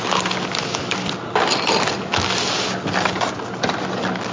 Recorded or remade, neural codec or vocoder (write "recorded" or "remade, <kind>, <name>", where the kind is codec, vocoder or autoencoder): recorded